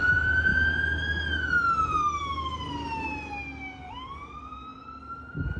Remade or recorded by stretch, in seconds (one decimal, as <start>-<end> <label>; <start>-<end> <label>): 0.0-5.6 recorded